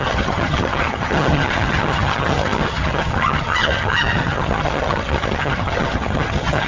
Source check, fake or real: fake